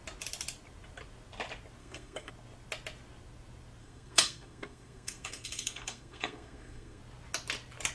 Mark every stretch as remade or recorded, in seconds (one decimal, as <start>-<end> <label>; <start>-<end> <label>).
0.0-1.8 recorded; 1.8-2.3 remade; 2.3-3.8 recorded; 3.8-7.0 remade; 7.0-7.9 recorded